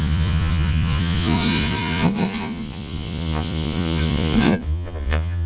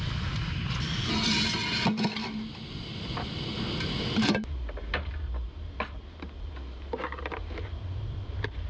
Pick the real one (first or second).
second